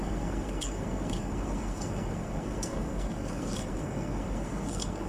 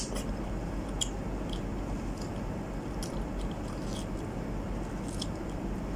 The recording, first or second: second